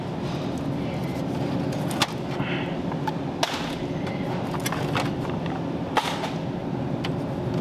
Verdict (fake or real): real